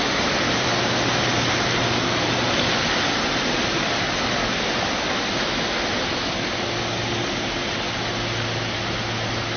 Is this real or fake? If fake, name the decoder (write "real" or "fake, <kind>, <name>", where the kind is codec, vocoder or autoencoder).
real